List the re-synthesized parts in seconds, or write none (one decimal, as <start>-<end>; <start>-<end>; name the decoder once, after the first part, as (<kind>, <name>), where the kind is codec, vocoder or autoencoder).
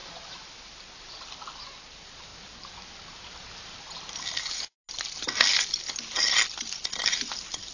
none